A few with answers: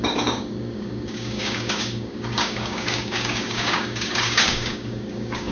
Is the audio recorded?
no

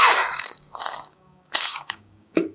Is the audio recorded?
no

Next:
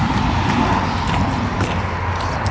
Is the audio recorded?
yes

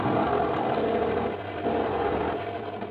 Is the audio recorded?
yes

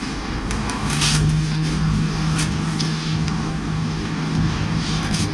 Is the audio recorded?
no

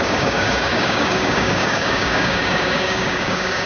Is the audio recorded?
no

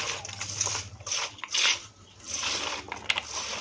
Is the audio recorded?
yes